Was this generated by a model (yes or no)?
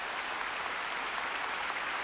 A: no